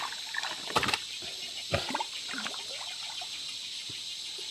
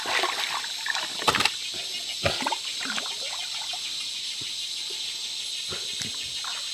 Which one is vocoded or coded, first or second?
first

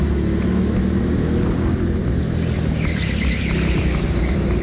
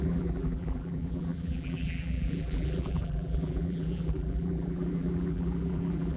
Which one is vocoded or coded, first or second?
second